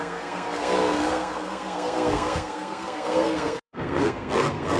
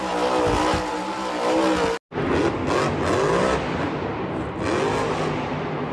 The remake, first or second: first